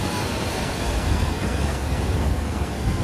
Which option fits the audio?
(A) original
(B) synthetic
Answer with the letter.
B